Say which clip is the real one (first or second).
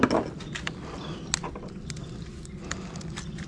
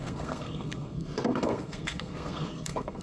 first